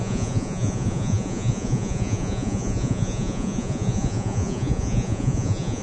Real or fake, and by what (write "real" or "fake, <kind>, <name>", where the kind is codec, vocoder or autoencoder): fake, vocoder, Vocos